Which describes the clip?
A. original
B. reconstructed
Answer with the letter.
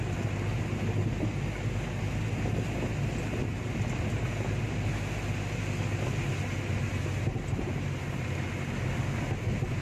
A